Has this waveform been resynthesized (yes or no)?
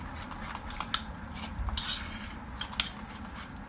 no